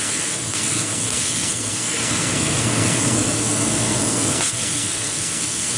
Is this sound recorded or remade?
remade